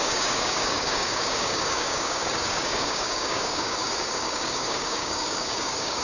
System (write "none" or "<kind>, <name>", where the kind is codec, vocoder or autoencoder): codec, DAC